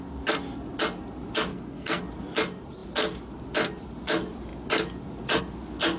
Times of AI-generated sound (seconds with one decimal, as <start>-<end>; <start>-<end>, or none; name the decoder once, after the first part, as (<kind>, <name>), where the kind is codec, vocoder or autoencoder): 1.5-2.0 (codec, SNAC)